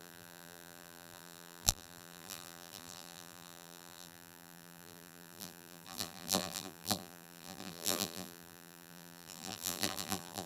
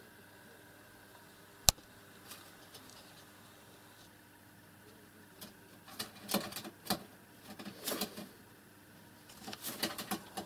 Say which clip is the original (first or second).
second